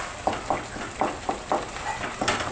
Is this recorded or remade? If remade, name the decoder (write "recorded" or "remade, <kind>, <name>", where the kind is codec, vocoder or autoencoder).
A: recorded